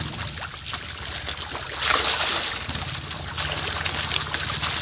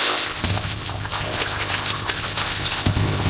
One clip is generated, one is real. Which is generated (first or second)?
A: second